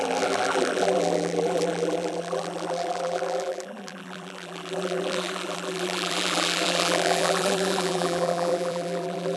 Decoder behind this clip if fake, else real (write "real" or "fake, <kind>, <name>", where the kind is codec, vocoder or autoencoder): fake, vocoder, BigVGAN v2